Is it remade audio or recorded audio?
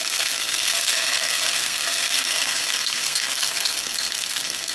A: remade